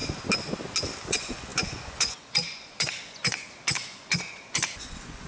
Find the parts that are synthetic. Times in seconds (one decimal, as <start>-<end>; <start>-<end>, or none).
1.1-5.3